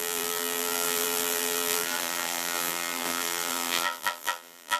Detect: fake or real fake